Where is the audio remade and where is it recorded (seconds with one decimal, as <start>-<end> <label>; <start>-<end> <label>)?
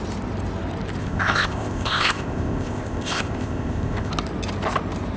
0.0-1.0 recorded; 1.0-4.1 remade; 4.1-5.2 recorded